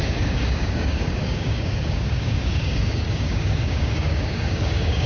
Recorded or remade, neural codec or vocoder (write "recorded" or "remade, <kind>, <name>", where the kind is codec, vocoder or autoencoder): remade, codec, DAC